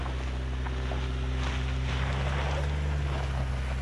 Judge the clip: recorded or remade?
recorded